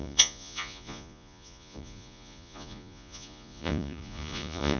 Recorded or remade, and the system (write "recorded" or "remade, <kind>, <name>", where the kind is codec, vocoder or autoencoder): remade, vocoder, Vocos